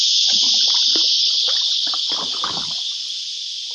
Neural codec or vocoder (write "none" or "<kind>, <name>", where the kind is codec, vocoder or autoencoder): none